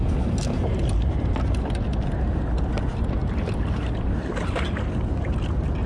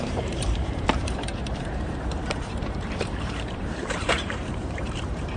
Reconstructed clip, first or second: second